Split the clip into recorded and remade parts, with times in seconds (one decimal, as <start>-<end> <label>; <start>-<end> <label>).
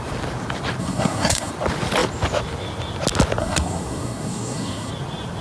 0.0-0.8 recorded; 0.8-1.5 remade; 1.5-3.4 recorded; 3.4-4.9 remade; 4.9-5.4 recorded